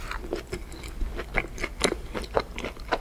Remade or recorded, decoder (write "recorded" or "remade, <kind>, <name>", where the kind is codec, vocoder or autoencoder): recorded